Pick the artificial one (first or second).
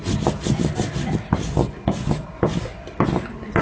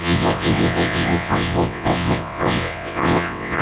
second